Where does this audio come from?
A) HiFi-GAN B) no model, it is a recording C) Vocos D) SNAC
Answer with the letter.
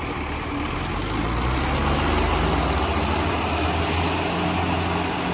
B